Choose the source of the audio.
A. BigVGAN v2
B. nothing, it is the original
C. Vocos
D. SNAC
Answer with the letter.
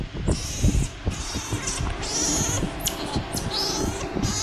B